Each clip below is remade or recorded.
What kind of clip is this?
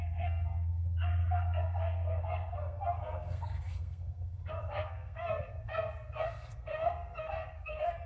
remade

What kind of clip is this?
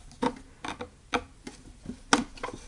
recorded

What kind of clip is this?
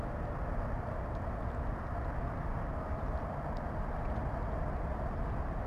recorded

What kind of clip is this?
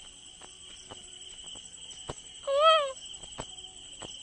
recorded